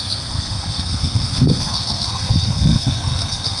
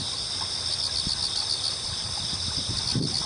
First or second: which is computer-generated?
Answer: first